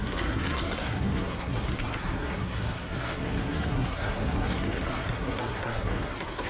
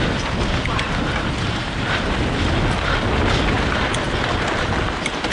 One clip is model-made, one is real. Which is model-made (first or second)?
first